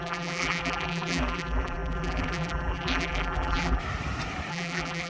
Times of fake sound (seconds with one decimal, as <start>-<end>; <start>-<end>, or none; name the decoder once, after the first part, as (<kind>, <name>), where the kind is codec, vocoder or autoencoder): 0.0-3.8 (vocoder, BigVGAN v2); 4.5-5.1